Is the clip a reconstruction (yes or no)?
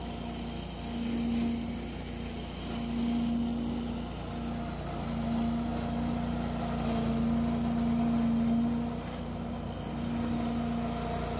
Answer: no